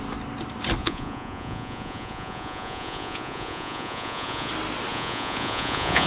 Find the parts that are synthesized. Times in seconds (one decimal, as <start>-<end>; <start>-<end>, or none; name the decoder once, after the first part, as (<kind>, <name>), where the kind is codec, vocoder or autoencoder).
0.8-4.5 (vocoder, Vocos); 4.9-6.1